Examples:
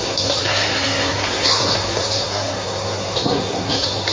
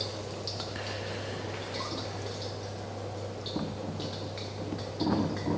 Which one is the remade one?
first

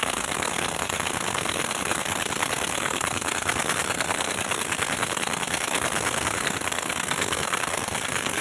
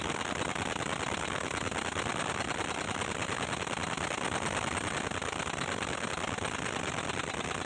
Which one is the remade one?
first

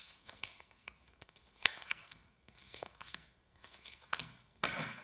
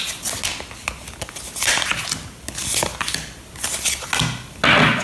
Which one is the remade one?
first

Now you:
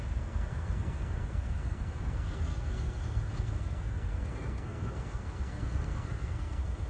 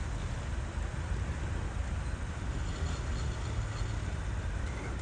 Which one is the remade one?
first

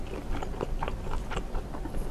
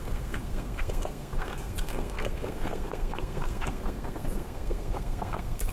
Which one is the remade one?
second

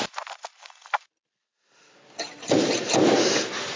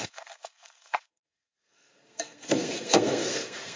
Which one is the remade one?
second